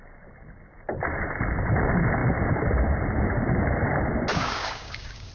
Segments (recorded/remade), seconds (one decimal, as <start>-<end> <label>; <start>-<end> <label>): 0.0-4.3 recorded; 4.3-5.3 remade